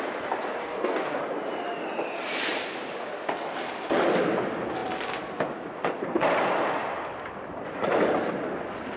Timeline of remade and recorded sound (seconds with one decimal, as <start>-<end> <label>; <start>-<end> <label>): 0.0-0.6 recorded; 0.6-1.2 remade; 1.2-9.0 recorded